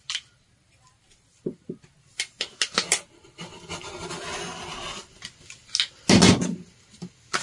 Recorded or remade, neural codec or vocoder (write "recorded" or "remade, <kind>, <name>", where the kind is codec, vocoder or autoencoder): recorded